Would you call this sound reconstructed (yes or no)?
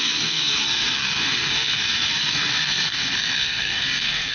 yes